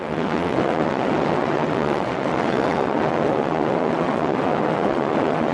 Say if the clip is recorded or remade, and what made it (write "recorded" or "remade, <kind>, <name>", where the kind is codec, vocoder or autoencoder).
remade, vocoder, WaveNeXt